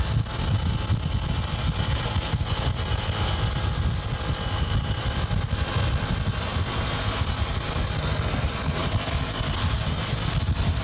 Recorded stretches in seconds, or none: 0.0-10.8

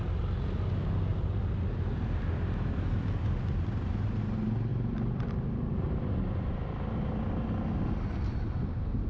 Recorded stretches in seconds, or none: 0.0-1.1; 3.9-4.7; 6.2-9.1

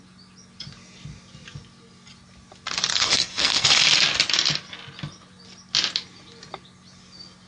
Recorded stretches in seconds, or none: 0.0-2.9; 3.8-7.5

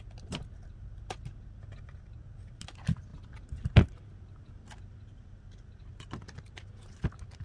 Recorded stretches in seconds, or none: 0.0-7.4

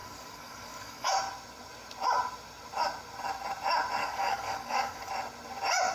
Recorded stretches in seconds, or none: 1.1-4.0; 5.1-5.9